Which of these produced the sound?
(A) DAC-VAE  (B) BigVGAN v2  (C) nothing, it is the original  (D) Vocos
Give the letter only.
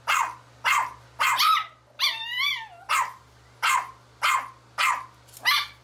C